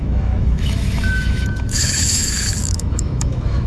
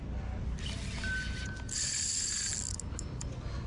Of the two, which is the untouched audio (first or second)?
second